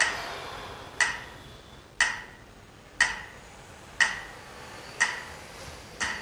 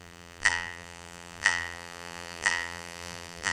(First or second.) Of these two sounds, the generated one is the second